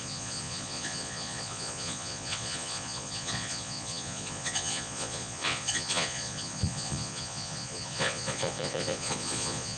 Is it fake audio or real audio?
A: fake